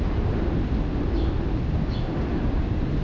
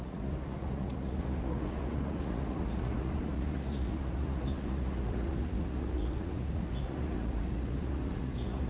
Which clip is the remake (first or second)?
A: second